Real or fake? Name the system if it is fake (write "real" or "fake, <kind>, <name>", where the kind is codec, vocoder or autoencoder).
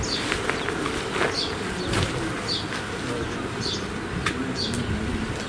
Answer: real